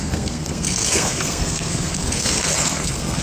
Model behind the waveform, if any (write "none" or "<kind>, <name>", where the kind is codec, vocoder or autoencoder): codec, SNAC